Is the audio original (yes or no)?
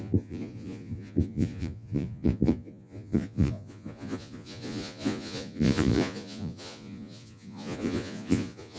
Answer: no